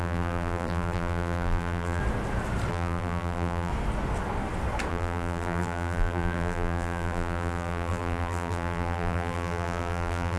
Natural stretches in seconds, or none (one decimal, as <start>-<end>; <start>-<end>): 2.0-2.7; 3.7-4.9